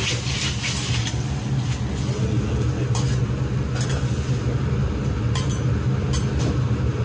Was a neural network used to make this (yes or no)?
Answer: no